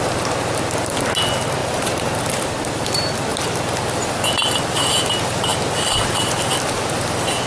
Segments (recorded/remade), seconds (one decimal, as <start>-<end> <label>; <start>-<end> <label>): 0.0-1.6 recorded; 1.6-2.2 remade; 2.2-7.5 recorded